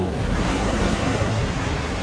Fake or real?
fake